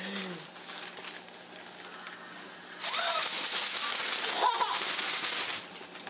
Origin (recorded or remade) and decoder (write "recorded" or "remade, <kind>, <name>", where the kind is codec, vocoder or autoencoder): recorded